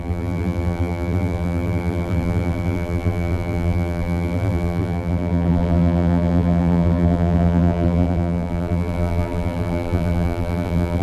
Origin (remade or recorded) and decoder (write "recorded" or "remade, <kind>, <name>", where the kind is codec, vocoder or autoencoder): remade, vocoder, BigVGAN v2